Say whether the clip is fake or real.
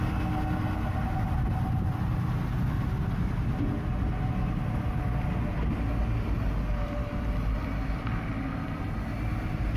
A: real